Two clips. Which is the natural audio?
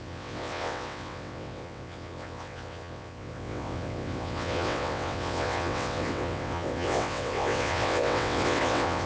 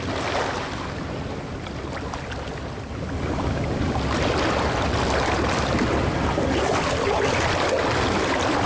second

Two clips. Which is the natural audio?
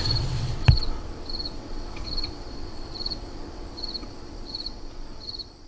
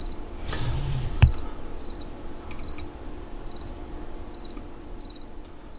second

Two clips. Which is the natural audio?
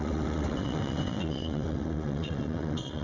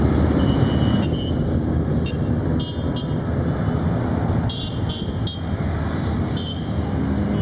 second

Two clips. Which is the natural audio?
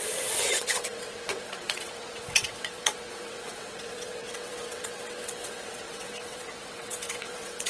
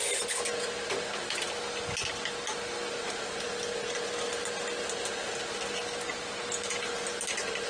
second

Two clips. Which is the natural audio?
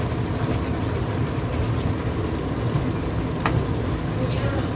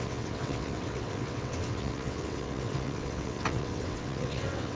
first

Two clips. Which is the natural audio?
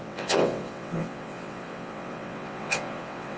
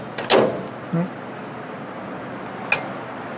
second